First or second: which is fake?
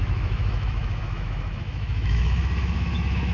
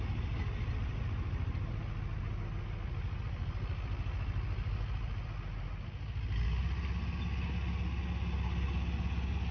first